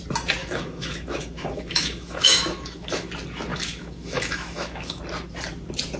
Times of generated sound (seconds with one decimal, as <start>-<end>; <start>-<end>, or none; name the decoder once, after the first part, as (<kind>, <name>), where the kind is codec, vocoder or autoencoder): 0.4-3.1 (autoencoder, DAC-VAE); 3.5-5.0